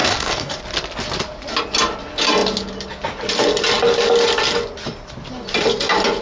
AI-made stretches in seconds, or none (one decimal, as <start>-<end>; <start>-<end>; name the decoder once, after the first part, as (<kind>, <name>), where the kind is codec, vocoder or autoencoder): 0.0-0.6 (codec, DAC)